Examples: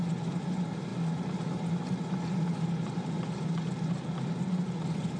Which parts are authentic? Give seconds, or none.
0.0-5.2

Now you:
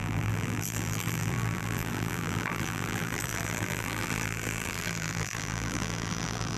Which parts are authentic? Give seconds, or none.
none

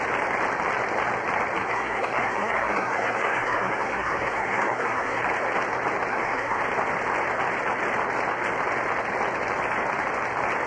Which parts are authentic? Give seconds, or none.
0.0-1.6; 5.2-6.1; 6.6-10.7

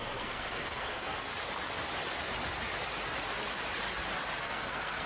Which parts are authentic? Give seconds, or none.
1.3-4.4

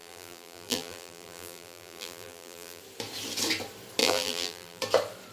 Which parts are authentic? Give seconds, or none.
2.8-4.0; 4.8-5.3

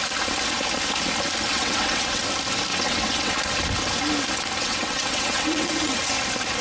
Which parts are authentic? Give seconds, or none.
0.0-1.5; 2.2-2.7; 3.4-4.6; 6.0-6.6

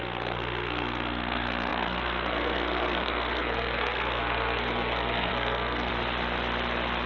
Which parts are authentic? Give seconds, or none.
5.9-7.1